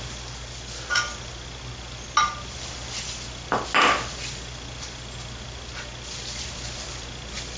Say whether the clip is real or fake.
real